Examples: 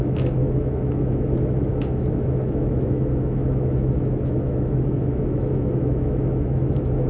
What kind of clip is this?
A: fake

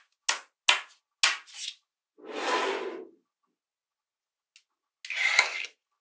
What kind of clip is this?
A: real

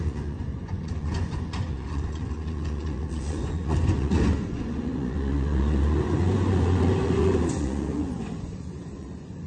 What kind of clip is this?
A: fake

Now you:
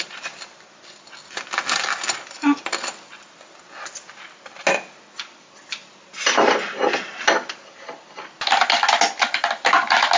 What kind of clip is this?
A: real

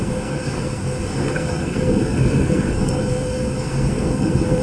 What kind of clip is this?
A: fake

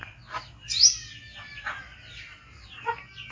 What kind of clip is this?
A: real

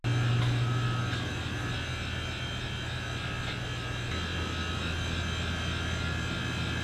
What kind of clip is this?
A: real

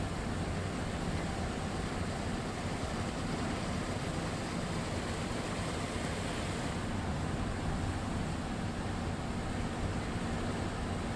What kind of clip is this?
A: real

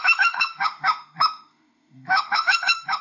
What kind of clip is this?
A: fake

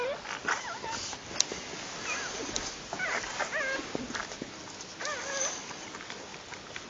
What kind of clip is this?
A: real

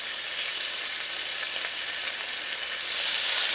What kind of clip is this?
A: real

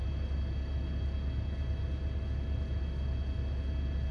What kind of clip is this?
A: real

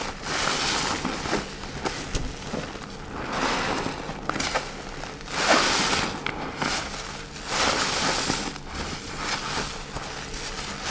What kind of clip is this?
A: real